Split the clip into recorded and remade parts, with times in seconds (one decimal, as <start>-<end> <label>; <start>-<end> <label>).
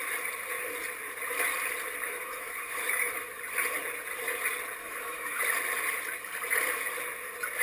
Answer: 0.0-2.1 recorded; 2.1-3.4 remade; 3.4-4.8 recorded; 4.8-5.4 remade; 5.4-7.6 recorded